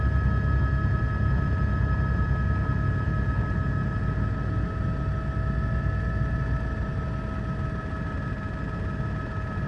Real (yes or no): yes